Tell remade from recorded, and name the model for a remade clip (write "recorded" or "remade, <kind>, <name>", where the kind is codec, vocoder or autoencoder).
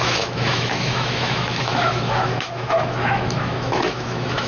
remade, autoencoder, DAC-VAE